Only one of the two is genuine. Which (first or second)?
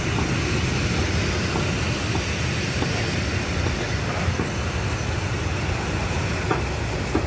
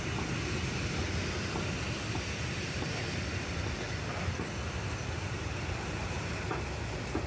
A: first